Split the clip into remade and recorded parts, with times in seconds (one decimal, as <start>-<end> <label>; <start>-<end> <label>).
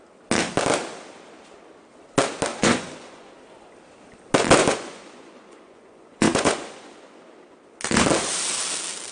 0.0-2.5 recorded; 2.5-3.3 remade; 3.3-4.6 recorded; 4.6-7.2 remade; 7.2-9.1 recorded